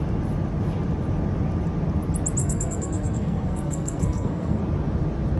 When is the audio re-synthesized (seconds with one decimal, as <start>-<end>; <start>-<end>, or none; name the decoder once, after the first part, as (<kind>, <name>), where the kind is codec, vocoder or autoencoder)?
2.4-4.6 (codec, SNAC)